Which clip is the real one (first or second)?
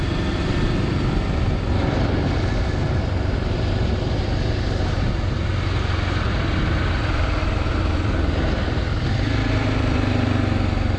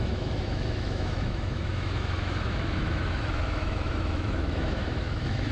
first